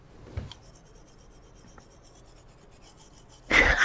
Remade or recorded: recorded